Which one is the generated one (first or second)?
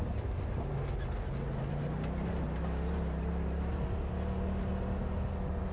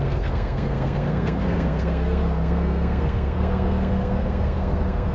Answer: second